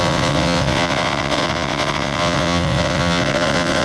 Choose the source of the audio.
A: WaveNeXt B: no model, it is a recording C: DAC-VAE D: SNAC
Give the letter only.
A